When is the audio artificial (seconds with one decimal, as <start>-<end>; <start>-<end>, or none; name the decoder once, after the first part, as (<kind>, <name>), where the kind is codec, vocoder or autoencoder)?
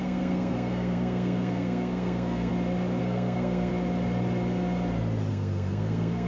0.0-2.5 (codec, SNAC); 3.0-3.7; 5.3-6.3